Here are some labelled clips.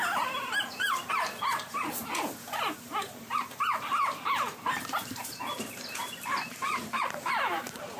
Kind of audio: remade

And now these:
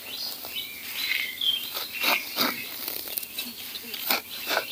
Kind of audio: recorded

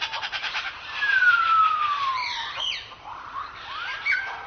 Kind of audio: remade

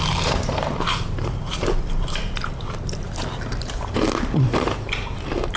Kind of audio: remade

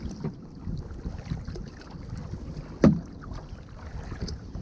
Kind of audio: recorded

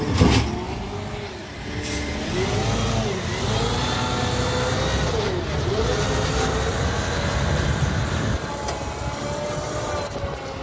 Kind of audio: recorded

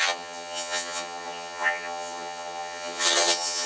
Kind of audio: remade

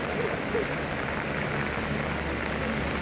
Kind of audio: recorded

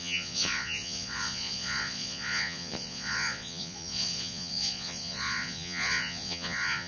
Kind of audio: remade